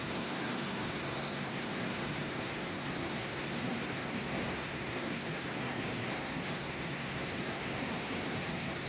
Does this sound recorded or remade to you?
remade